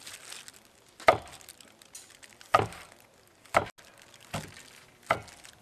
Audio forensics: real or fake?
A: real